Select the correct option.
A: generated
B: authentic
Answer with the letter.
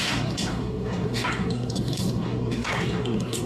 A